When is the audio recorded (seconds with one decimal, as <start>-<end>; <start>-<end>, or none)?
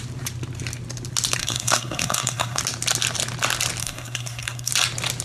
0.0-1.4; 2.6-3.8; 4.7-5.2